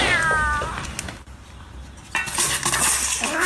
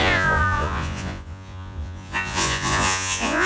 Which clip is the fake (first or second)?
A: second